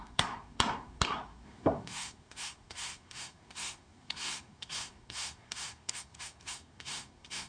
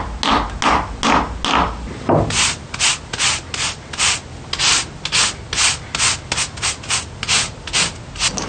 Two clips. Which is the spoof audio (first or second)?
first